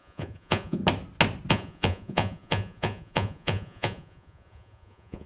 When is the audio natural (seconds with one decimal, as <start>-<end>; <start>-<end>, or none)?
0.8-1.5